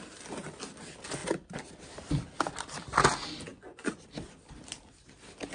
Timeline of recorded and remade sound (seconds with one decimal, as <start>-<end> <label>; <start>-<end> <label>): 0.0-3.5 recorded; 3.5-4.0 remade; 4.0-5.5 recorded